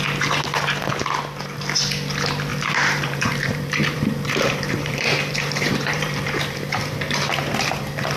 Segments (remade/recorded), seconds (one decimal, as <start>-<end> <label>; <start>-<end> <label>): 0.0-2.5 recorded; 2.5-6.4 remade; 6.4-8.2 recorded